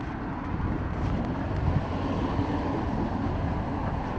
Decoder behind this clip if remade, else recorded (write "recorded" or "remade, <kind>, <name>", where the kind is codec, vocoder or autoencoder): recorded